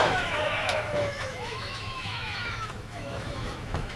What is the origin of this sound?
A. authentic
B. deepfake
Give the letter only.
B